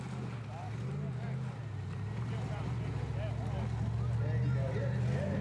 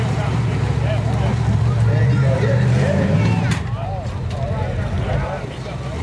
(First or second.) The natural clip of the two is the first